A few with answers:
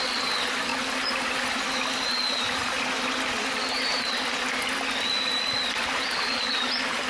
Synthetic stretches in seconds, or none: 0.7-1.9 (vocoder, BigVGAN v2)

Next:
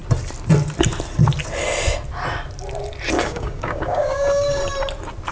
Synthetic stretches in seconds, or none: 3.2-4.6 (codec, DAC)

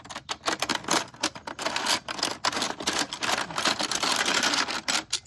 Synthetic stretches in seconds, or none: none

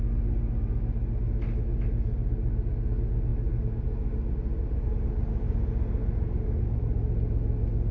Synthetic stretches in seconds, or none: none